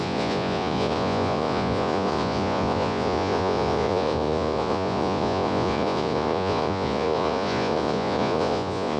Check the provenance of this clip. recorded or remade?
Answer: remade